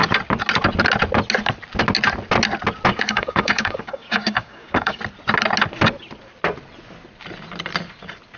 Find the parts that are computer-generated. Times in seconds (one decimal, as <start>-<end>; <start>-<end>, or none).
2.9-5.0